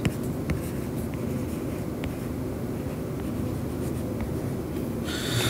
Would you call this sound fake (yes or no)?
no